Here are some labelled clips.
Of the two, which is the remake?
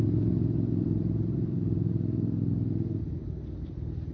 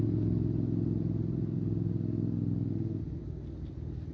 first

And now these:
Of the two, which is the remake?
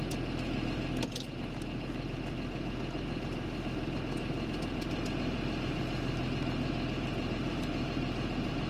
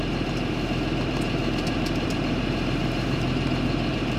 second